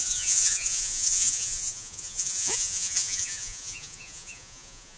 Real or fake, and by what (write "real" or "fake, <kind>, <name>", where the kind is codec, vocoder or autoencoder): fake, vocoder, Vocos